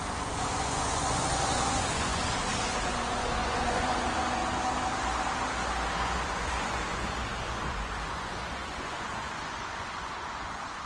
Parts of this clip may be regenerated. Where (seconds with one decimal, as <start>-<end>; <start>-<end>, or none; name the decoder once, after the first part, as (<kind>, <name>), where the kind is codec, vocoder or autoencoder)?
0.0-4.4 (vocoder, Vocos); 6.0-10.9